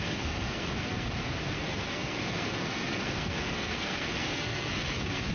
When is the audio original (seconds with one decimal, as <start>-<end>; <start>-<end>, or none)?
none